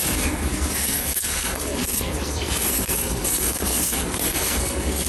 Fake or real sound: fake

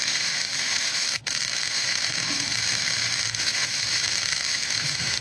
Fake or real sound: fake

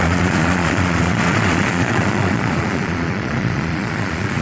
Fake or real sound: fake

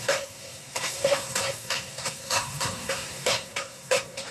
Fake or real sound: fake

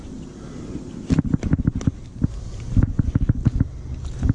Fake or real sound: real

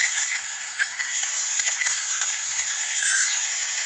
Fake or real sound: fake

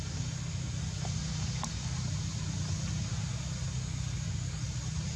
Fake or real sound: real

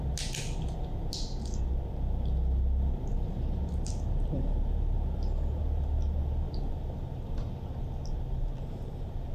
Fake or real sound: real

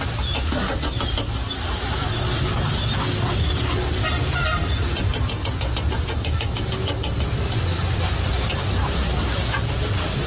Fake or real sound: real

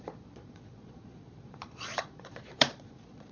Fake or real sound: fake